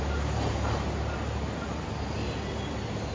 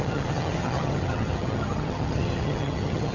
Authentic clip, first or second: first